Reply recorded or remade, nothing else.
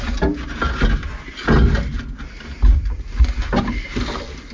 recorded